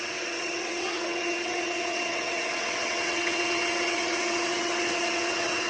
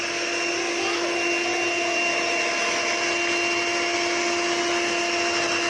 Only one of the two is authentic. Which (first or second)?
second